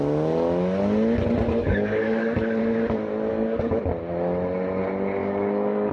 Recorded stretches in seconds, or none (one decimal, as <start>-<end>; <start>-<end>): 0.0-1.6; 2.6-3.3; 3.8-5.2